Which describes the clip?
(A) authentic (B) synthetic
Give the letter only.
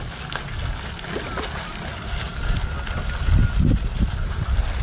A